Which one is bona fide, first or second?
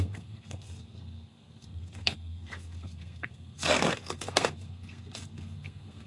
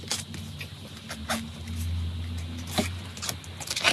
second